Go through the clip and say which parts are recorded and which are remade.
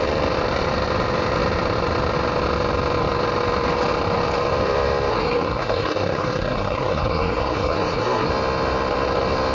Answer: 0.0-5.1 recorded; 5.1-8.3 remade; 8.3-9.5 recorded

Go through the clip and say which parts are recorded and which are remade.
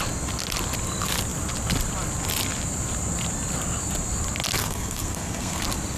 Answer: 0.0-4.6 recorded; 4.6-5.6 remade; 5.6-6.0 recorded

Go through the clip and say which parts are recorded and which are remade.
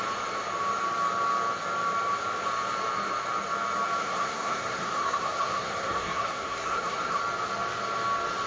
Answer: 0.0-4.0 recorded; 4.0-7.2 remade; 7.2-8.5 recorded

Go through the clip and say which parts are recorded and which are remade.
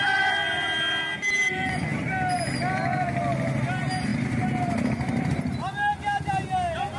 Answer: 0.0-7.0 recorded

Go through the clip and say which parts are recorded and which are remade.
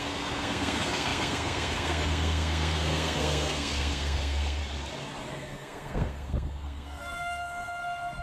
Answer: 0.0-4.6 remade; 4.6-5.3 recorded; 5.3-8.2 remade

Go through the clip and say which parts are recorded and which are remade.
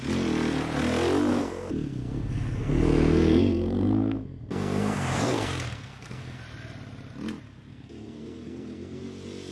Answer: 0.0-1.3 recorded; 1.3-6.4 remade; 6.4-7.7 recorded; 7.7-9.0 remade; 9.0-9.5 recorded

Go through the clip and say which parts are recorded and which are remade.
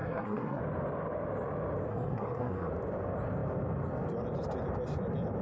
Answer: 0.0-0.6 remade; 0.6-1.9 recorded; 1.9-2.7 remade; 2.7-5.4 recorded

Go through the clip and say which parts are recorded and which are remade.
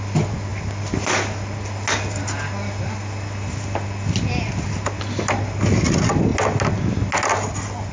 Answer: 0.0-7.9 recorded